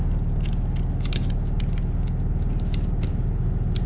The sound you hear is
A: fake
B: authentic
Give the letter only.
B